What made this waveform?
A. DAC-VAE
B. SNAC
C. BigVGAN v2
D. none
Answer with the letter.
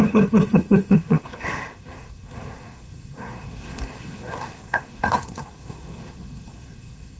B